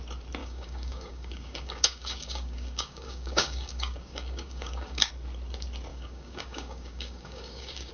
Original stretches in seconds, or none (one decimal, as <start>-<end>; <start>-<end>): 0.0-0.4; 5.1-5.9